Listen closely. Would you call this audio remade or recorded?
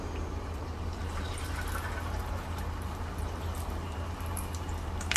remade